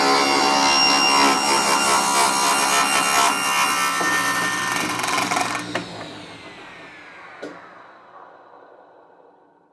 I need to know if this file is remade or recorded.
recorded